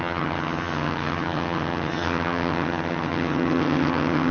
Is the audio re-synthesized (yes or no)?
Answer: yes